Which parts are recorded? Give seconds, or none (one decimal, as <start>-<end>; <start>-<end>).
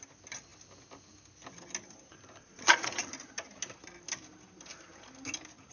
0.0-2.4; 3.0-5.7